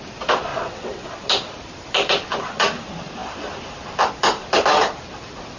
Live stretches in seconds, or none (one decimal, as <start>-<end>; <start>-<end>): 0.0-0.5; 1.1-5.6